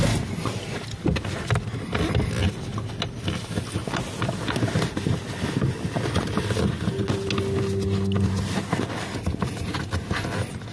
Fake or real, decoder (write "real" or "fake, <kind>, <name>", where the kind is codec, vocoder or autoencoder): real